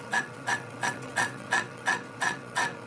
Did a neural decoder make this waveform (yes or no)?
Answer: yes